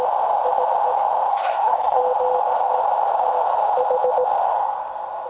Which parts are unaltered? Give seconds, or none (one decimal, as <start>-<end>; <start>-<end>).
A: 0.0-1.3; 2.0-5.3